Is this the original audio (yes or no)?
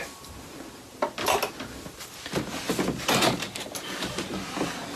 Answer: yes